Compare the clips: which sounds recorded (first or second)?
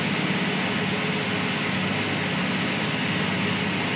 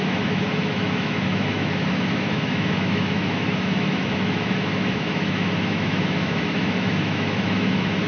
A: first